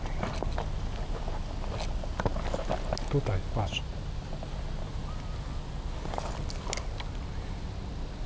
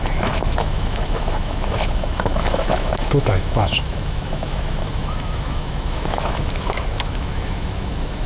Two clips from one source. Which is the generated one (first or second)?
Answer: second